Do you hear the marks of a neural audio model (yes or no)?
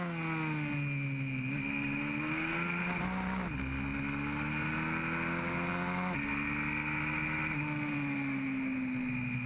no